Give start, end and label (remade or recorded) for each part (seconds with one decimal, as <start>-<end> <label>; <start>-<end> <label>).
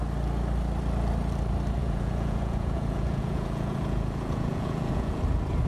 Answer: 0.0-1.8 recorded; 1.8-5.2 remade; 5.2-5.7 recorded